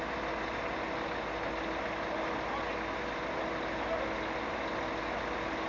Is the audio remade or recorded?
recorded